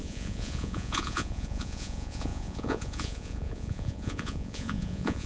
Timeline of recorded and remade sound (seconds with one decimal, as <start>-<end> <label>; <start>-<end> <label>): 0.0-5.3 remade